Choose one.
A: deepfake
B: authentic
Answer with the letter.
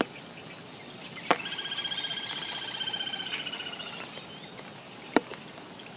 B